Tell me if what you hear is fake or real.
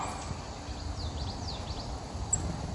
real